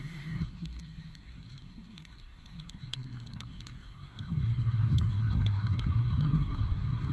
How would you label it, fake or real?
fake